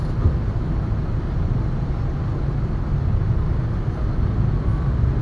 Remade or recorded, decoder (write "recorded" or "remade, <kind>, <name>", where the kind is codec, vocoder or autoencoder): recorded